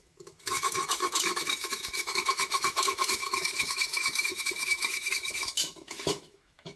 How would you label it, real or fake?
fake